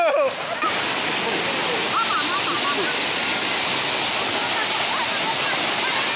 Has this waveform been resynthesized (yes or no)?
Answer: no